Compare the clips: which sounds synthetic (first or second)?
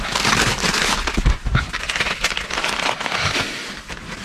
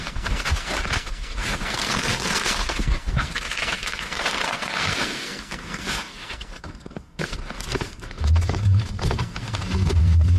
second